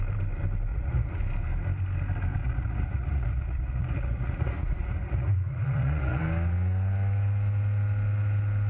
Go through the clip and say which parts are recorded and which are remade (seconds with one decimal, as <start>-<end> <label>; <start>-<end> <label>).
0.0-0.7 recorded; 0.7-1.2 remade; 1.2-2.4 recorded; 2.4-6.2 remade; 6.2-8.7 recorded